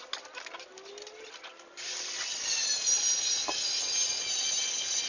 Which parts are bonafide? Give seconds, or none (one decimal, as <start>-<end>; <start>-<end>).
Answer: 0.0-5.1